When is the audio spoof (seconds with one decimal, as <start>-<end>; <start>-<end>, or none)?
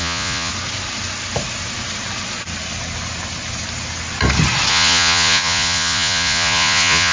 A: 0.0-0.5; 4.7-7.1